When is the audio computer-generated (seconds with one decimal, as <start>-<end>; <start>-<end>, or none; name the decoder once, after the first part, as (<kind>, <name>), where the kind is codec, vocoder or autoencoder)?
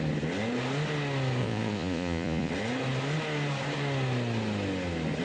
1.4-2.5 (vocoder, Vocos)